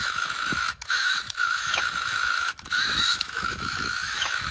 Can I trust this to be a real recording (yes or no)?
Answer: no